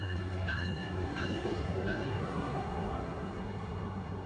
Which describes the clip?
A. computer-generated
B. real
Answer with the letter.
A